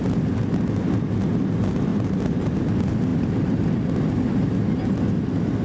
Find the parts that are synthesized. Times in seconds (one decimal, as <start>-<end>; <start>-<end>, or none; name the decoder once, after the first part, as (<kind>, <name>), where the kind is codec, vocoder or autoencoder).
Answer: 1.9-2.5 (vocoder, BigVGAN v2); 3.1-3.8